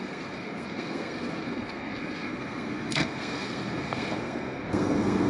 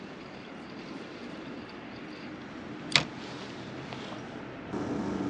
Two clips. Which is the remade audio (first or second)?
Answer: first